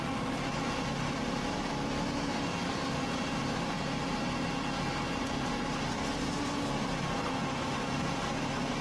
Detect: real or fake real